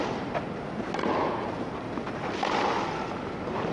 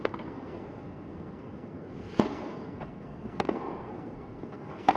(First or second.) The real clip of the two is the first